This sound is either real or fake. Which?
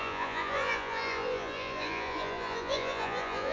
fake